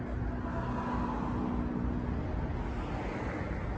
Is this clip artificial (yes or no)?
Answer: no